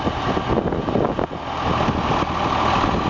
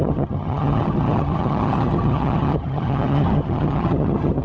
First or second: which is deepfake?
second